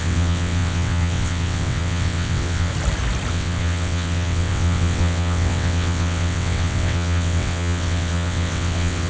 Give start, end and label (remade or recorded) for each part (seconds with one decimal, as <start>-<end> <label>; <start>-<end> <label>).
0.0-2.7 remade; 2.7-3.3 recorded; 3.3-9.1 remade